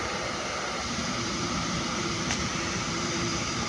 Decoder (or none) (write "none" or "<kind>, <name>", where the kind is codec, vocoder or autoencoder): vocoder, BigVGAN v2